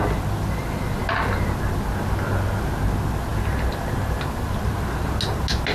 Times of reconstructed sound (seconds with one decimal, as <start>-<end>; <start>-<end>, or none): none